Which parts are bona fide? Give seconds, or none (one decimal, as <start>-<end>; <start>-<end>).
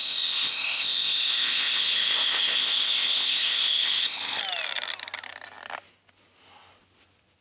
4.4-7.4